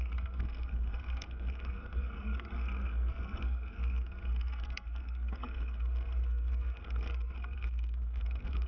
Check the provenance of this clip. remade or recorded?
remade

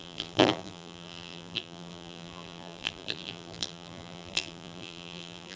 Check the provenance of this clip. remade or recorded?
remade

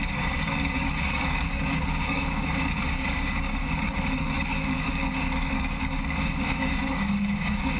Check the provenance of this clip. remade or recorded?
remade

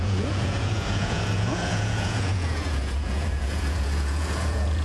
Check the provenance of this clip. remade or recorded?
remade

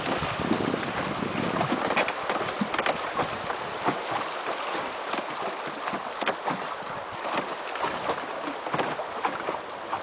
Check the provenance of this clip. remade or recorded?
recorded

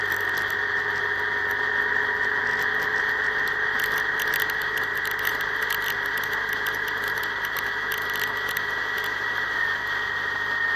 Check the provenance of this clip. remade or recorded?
recorded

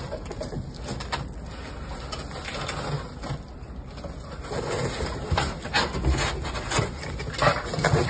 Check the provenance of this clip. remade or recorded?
recorded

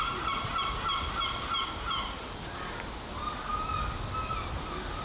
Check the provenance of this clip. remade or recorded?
recorded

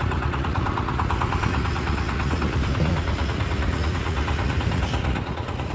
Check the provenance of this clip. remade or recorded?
remade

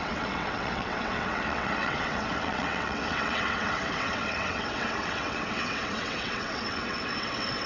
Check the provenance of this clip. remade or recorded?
remade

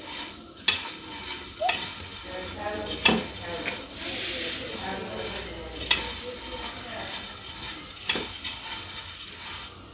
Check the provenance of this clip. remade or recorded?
recorded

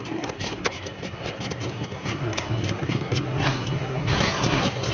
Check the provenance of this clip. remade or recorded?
remade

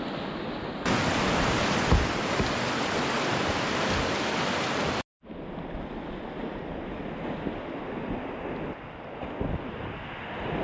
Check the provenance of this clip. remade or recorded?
recorded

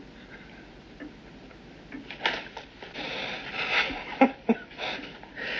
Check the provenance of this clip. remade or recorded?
recorded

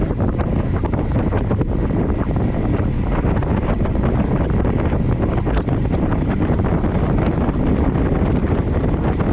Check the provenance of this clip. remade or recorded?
recorded